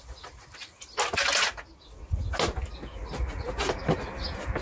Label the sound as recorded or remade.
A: recorded